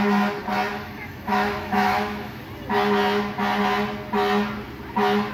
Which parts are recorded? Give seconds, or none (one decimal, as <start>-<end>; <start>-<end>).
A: 0.0-0.7; 2.4-5.3